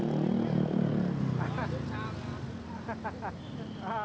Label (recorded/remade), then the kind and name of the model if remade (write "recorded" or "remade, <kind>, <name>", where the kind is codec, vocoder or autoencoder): recorded